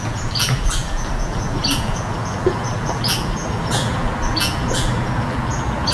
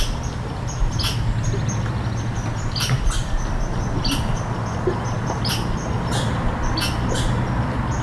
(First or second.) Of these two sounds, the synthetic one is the first